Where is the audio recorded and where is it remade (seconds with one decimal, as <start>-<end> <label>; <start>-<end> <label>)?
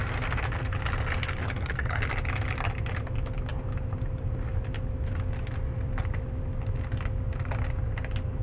0.0-1.4 recorded; 1.4-2.0 remade; 2.0-8.4 recorded